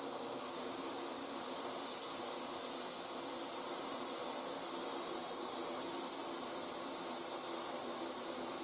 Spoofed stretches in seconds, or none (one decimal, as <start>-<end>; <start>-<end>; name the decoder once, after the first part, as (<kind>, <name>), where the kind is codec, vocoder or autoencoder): none